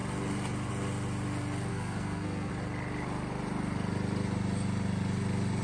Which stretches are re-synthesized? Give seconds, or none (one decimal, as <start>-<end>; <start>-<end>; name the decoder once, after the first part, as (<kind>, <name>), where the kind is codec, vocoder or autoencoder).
1.7-2.5 (codec, SNAC)